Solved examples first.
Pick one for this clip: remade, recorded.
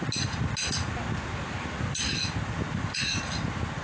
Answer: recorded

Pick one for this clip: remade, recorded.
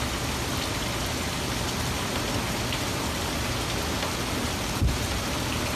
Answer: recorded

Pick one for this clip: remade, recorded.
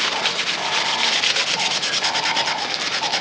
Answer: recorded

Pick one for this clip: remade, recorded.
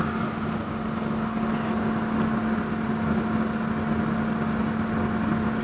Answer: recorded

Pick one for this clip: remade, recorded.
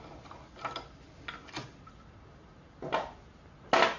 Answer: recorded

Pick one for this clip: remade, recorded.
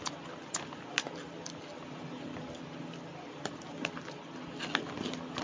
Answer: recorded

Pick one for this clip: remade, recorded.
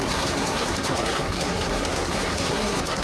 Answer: remade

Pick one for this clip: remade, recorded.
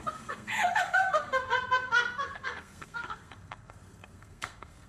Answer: remade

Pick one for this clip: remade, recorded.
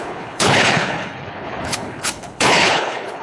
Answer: remade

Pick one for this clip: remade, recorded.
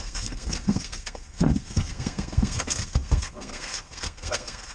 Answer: remade